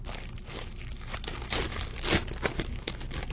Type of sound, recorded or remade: recorded